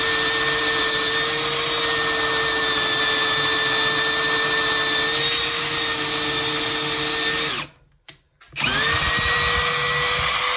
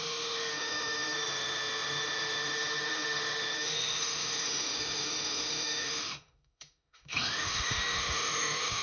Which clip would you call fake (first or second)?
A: second